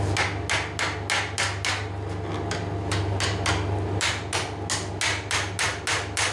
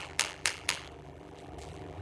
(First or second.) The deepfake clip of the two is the second